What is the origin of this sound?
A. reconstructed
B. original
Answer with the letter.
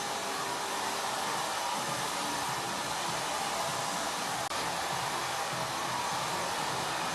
B